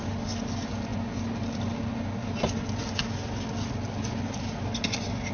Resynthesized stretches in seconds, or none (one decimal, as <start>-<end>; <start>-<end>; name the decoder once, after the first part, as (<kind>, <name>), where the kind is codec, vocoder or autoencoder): none